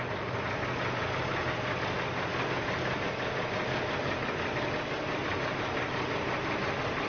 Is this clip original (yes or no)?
yes